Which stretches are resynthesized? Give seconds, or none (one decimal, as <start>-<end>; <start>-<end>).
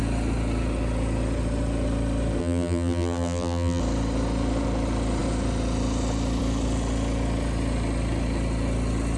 2.4-3.8